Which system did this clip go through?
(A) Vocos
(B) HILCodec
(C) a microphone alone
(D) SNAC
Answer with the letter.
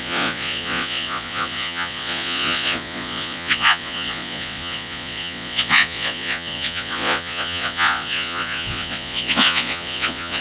A